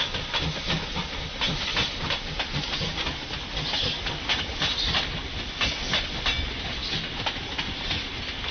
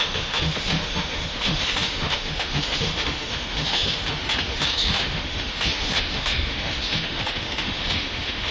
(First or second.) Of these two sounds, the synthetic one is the second